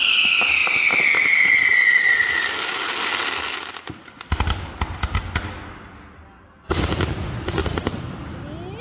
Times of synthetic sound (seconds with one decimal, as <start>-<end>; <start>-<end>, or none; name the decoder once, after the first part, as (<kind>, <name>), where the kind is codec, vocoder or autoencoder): none